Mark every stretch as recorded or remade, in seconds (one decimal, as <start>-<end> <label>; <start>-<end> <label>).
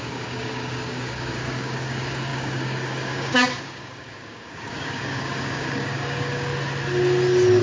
0.0-6.5 remade; 6.5-7.6 recorded